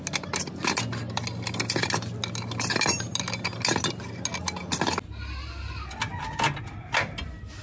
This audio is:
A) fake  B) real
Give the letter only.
B